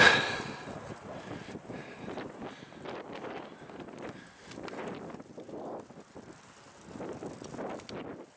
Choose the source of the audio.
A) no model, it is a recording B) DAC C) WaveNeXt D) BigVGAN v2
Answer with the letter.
A